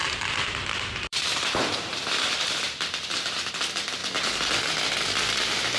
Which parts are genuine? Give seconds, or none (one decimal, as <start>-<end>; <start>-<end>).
3.5-5.8